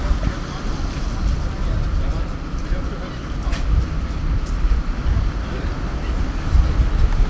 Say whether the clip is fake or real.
real